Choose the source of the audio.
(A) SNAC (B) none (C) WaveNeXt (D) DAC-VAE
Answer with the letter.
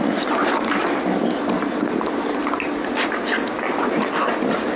B